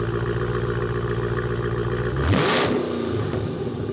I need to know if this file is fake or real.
real